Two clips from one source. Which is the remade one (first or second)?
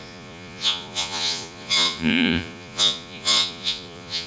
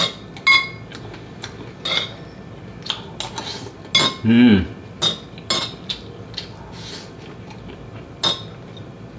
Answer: first